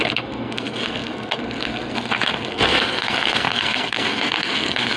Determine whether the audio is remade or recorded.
remade